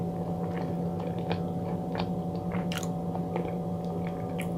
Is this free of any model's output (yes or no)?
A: yes